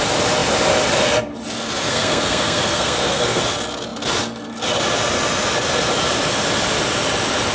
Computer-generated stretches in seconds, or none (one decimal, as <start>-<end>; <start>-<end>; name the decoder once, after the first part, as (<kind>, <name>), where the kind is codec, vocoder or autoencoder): 1.9-3.4 (codec, SNAC)